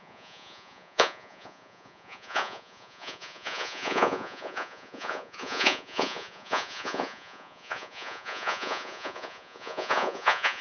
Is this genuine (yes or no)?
no